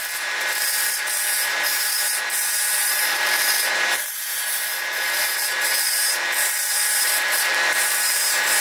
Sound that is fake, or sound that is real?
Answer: fake